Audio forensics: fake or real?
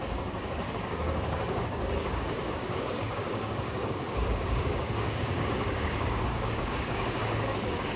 fake